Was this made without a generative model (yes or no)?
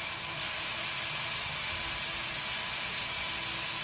yes